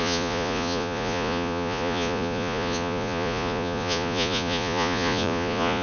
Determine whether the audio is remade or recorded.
remade